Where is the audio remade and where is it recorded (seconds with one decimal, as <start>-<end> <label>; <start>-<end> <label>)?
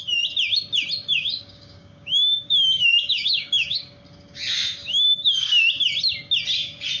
0.0-1.1 recorded; 1.1-4.0 remade; 4.0-4.8 recorded; 4.8-5.6 remade; 5.6-7.0 recorded